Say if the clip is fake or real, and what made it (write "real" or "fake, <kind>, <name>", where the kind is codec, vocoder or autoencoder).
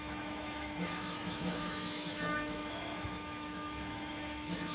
fake, autoencoder, DAC-VAE